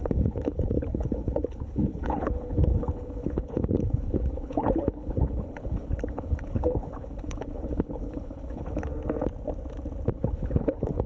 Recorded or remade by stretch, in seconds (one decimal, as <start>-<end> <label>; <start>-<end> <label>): 0.0-8.9 remade; 8.9-10.1 recorded; 10.1-11.1 remade